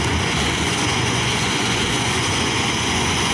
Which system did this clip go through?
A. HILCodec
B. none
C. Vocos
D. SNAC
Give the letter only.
C